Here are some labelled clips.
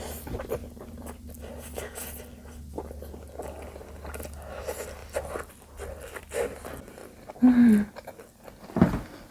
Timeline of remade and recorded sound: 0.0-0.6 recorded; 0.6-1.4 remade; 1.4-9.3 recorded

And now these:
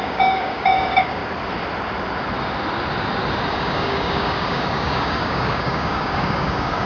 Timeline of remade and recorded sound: 0.0-1.2 remade; 1.2-3.5 recorded; 3.5-6.9 remade

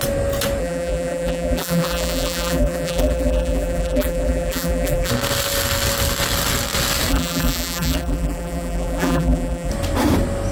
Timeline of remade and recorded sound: 0.0-0.6 recorded; 0.6-5.1 remade; 5.1-7.1 recorded; 7.1-9.7 remade; 9.7-10.5 recorded

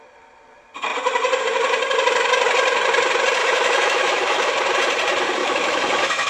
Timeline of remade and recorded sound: 0.0-3.4 recorded; 3.4-4.5 remade; 4.5-5.4 recorded; 5.4-6.3 remade

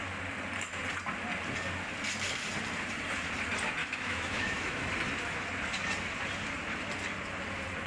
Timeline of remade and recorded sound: 0.0-3.8 recorded; 3.8-4.9 remade; 4.9-7.9 recorded